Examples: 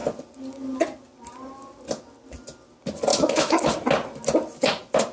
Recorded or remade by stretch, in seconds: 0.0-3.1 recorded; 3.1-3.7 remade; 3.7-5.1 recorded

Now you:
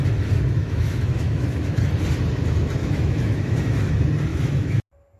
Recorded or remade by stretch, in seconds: 0.0-0.6 recorded; 0.6-1.8 remade; 1.8-2.8 recorded; 2.8-3.9 remade; 3.9-4.3 recorded; 4.3-4.8 remade; 4.8-5.2 recorded

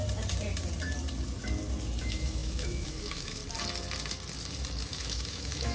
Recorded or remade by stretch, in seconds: 0.0-2.0 recorded; 2.0-3.4 remade; 3.4-4.9 recorded; 4.9-5.7 remade

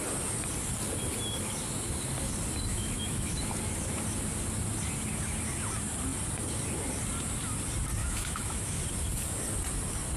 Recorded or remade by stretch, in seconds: 0.0-2.7 recorded; 2.7-3.4 remade; 3.4-8.0 recorded; 8.0-8.8 remade; 8.8-10.2 recorded

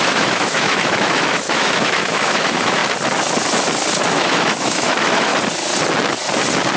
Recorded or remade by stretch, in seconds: 0.0-2.8 remade; 2.8-4.1 recorded; 4.1-5.3 remade; 5.3-6.8 recorded

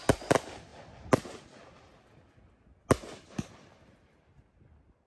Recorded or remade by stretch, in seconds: 0.0-5.1 recorded